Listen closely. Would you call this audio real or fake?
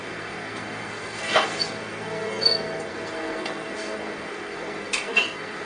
fake